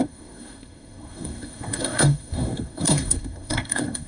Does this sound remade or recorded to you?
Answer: remade